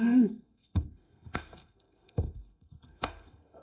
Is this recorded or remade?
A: remade